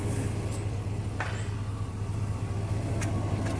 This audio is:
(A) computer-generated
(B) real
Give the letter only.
B